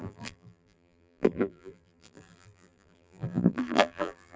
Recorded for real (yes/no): no